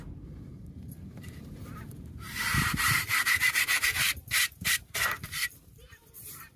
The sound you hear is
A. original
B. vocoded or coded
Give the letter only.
B